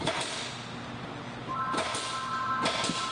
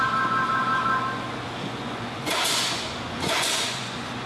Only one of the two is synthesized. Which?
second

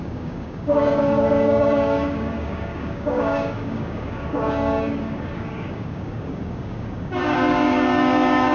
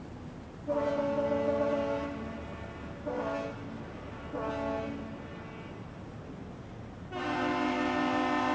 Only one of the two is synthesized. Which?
first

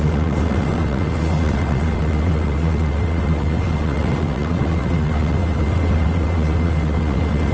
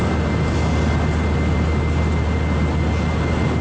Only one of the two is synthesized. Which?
first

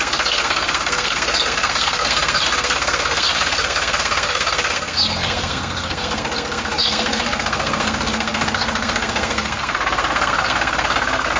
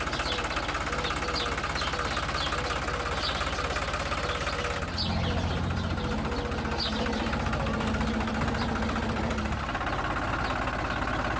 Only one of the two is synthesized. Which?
first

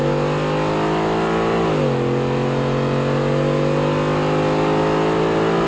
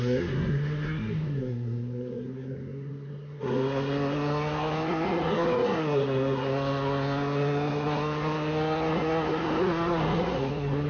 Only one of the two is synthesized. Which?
second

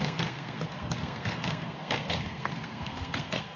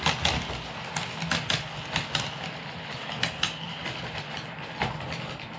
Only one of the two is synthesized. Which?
first